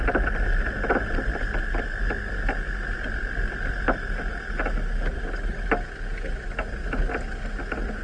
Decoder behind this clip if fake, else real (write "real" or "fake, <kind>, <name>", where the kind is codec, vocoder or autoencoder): real